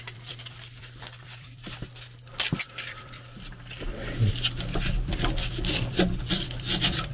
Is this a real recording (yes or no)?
no